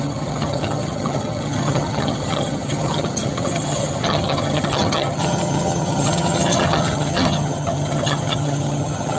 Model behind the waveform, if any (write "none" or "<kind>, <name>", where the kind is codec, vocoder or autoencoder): vocoder, HiFi-GAN